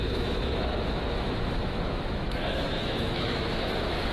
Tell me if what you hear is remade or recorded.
remade